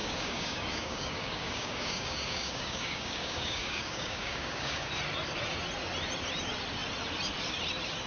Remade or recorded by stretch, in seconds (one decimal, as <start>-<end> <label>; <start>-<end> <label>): 0.0-4.9 remade; 4.9-8.1 recorded